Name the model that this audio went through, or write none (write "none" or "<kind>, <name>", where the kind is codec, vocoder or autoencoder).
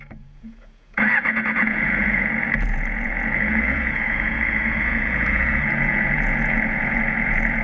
vocoder, Vocos